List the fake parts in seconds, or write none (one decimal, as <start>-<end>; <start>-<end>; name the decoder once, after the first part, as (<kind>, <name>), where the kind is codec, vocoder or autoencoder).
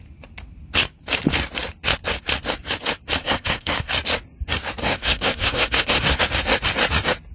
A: 3.2-3.9 (codec, SNAC); 4.8-6.2